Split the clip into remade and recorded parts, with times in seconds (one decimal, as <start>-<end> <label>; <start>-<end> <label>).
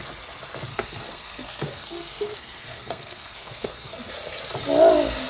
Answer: 0.0-0.7 recorded; 0.7-3.9 remade; 3.9-5.3 recorded